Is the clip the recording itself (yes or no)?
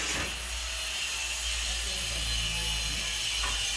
yes